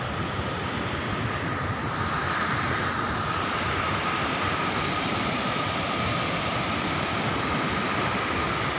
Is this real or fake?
fake